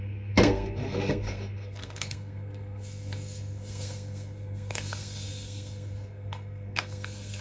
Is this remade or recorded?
remade